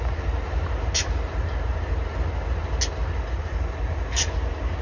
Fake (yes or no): no